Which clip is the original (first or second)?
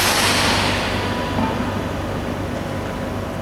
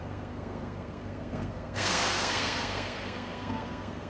first